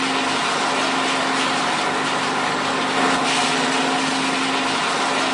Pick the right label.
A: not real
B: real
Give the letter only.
B